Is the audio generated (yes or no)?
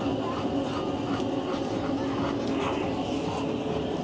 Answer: no